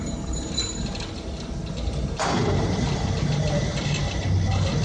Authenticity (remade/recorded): recorded